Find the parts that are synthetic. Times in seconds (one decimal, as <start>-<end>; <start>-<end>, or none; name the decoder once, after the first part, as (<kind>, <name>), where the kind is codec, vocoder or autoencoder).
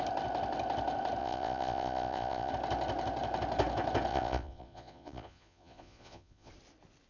1.2-2.5 (vocoder, Vocos); 4.1-6.5